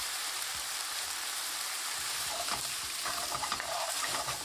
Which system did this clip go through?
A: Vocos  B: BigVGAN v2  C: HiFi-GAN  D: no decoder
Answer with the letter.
B